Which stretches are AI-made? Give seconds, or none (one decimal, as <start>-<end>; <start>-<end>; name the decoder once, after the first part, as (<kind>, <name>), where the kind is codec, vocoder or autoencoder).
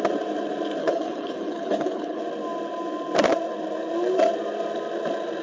0.8-2.2 (codec, HILCodec)